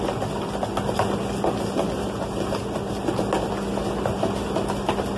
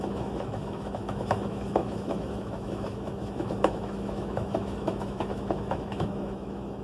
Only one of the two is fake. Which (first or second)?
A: second